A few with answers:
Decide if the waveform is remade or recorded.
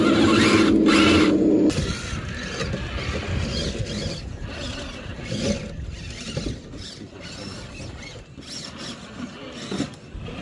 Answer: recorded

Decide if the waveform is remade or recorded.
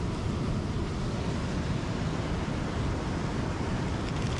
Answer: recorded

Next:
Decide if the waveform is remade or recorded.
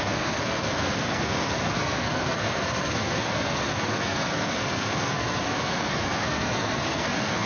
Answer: remade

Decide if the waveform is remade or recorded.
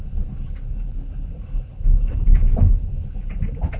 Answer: recorded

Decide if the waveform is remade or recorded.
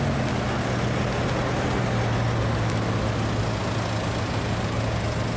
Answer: recorded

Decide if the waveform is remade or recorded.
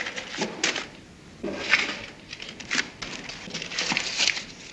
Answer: recorded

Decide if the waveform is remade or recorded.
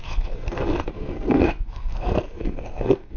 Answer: remade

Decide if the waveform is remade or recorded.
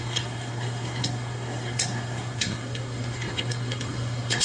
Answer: remade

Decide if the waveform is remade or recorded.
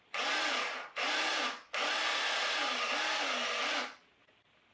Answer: recorded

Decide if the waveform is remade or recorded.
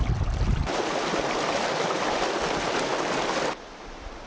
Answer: recorded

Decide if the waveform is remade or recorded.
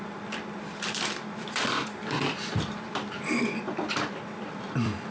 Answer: remade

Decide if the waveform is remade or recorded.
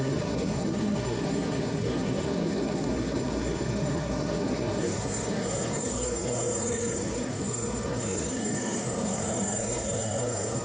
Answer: remade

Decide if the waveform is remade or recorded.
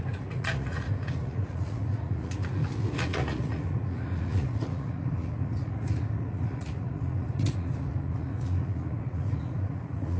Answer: remade